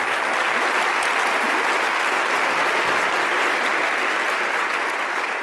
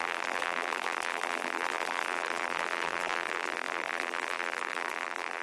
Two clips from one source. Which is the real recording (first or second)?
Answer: first